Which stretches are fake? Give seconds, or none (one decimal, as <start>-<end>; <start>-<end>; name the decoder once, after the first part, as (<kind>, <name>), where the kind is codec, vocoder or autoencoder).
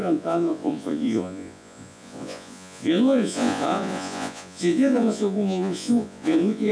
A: 0.0-6.7 (vocoder, Vocos)